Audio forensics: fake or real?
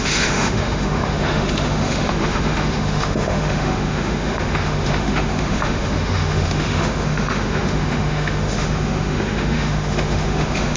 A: fake